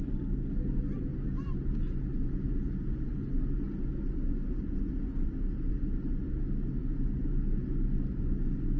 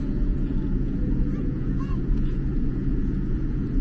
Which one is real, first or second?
first